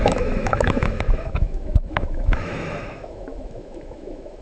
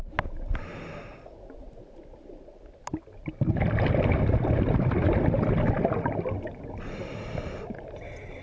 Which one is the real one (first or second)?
second